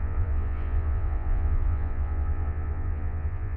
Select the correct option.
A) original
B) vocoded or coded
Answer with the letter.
B